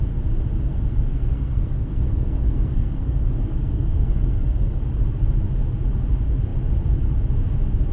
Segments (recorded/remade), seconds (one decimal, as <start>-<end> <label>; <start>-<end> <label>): 0.0-0.7 recorded; 0.7-4.8 remade; 4.8-7.9 recorded